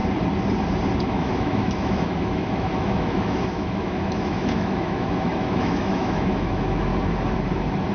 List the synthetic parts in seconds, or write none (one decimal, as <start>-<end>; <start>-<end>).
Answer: 1.0-6.9